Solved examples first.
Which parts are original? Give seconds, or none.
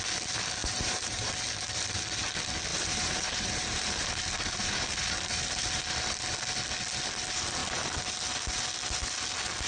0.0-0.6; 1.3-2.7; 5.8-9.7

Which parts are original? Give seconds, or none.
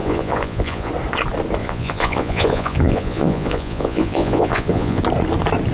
0.9-1.6; 5.0-5.7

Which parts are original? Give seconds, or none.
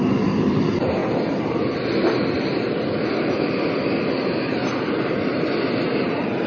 0.0-6.5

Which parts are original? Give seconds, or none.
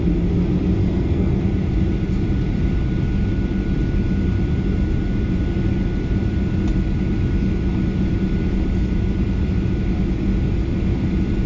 0.0-0.8; 1.4-11.5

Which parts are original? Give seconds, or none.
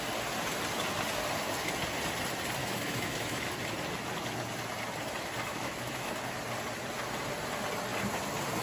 0.0-2.6; 3.5-5.5; 6.1-8.6